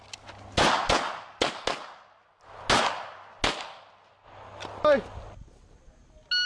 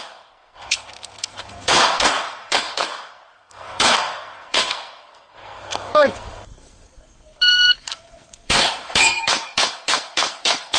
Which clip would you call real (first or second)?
first